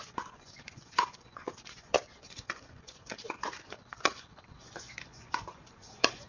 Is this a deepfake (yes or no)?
yes